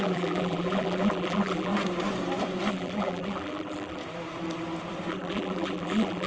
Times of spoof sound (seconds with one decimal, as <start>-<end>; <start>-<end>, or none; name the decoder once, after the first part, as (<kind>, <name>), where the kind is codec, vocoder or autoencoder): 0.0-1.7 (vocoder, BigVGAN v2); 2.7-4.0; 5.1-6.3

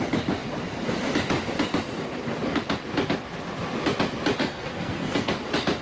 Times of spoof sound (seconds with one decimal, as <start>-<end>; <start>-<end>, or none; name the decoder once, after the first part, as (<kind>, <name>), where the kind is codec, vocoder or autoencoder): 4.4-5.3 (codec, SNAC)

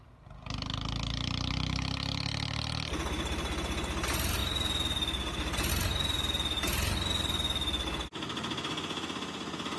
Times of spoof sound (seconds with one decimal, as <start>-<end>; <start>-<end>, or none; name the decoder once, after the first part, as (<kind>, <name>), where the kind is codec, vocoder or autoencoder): none

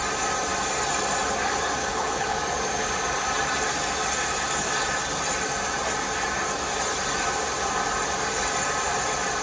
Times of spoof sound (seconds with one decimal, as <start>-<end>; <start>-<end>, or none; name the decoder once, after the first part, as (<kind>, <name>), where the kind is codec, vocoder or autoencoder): 1.8-2.4 (codec, HILCodec)

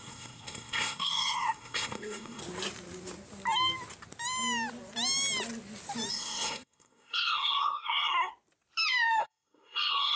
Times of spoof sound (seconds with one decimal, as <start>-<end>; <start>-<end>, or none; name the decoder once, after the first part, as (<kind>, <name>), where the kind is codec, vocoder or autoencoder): 0.0-2.4 (codec, SNAC); 6.1-8.3; 9.2-10.2

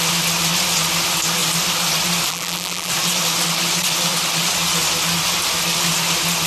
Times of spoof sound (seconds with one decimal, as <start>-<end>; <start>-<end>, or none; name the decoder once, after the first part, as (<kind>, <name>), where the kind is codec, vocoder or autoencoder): 2.3-2.9 (vocoder, BigVGAN v2)

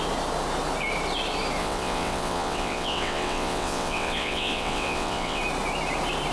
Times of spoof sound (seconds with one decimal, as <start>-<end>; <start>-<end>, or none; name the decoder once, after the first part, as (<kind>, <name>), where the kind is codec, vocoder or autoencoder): 1.6-5.4 (vocoder, WaveNeXt)

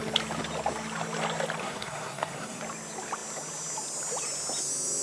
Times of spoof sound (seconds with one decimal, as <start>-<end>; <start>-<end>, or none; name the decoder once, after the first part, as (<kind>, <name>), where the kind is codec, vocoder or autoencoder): 1.6-2.6 (codec, SNAC)